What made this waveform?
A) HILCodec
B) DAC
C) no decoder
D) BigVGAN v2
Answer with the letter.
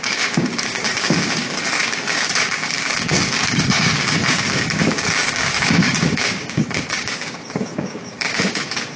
B